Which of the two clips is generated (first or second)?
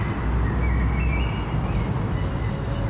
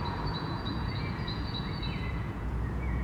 second